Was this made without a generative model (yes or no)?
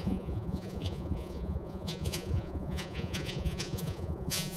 no